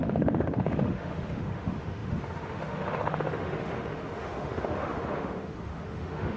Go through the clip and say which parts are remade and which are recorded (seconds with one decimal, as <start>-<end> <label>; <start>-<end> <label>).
0.0-6.4 remade